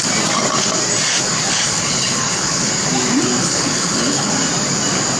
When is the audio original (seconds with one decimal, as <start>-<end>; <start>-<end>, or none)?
0.0-1.5; 2.7-3.4; 4.3-5.2